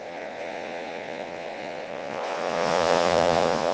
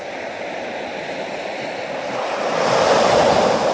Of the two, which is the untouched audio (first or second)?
second